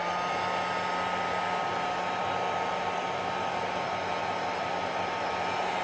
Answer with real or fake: real